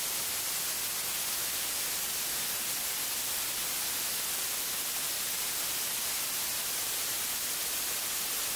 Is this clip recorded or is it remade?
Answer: recorded